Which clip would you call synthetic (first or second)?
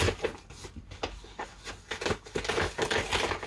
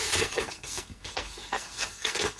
second